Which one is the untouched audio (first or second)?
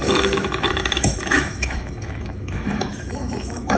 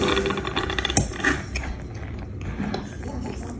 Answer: second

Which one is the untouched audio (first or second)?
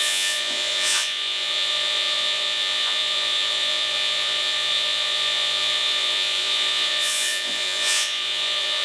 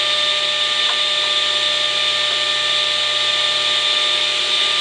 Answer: second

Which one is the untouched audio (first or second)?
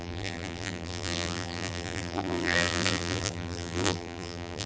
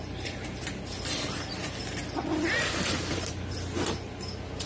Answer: second